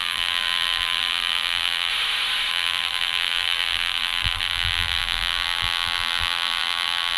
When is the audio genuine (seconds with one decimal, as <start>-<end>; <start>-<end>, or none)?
1.9-2.5